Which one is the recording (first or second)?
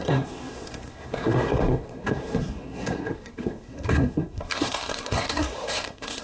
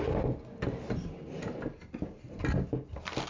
second